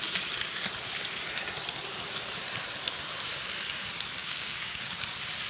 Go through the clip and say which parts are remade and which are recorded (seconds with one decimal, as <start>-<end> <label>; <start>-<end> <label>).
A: 0.0-4.2 recorded; 4.2-5.0 remade; 5.0-5.5 recorded